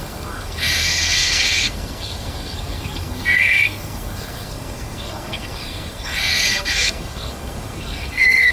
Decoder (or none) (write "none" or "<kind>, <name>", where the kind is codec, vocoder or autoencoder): codec, SNAC